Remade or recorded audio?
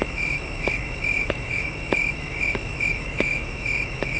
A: remade